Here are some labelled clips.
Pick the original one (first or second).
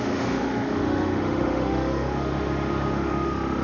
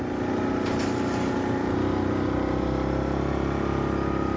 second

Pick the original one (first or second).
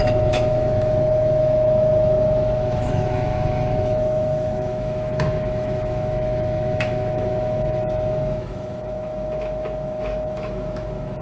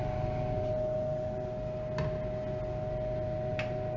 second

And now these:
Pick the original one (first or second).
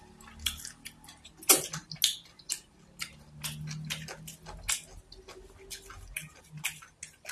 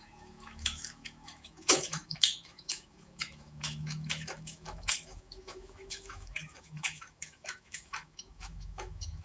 first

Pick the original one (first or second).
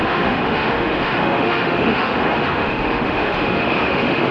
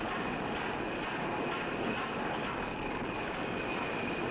second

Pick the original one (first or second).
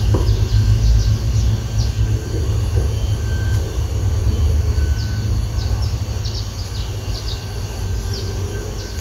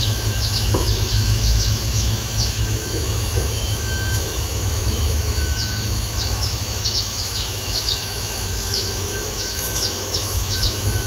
first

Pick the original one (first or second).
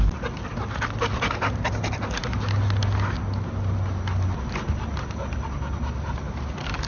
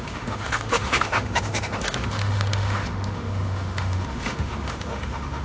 first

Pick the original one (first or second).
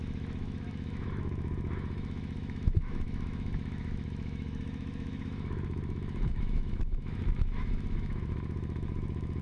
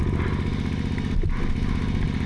second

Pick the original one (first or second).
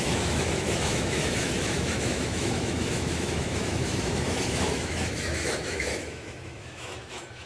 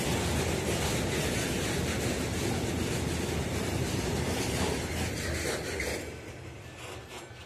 second